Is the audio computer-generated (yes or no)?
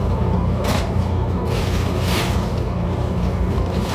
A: yes